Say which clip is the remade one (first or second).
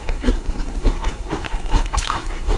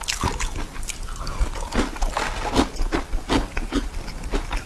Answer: first